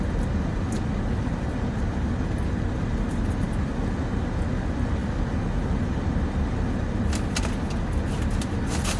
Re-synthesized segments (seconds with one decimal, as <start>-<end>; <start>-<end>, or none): none

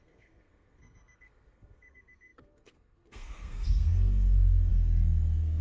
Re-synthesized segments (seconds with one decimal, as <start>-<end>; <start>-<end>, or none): 0.0-5.6